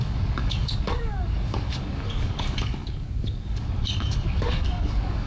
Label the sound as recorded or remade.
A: remade